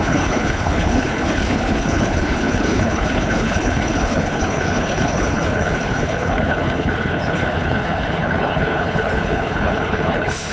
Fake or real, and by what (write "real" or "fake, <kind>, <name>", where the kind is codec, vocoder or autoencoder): fake, codec, HILCodec